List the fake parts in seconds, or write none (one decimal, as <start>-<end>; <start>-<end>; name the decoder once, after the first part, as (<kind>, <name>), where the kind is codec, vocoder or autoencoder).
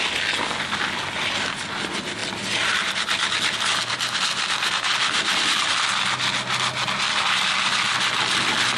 none